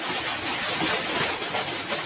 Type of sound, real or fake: real